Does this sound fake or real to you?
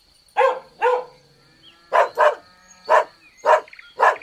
real